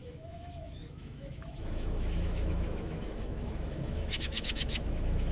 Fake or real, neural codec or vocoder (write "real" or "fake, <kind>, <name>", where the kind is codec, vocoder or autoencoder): fake, autoencoder, DAC-VAE